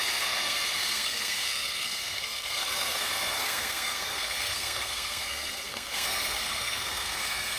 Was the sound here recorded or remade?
remade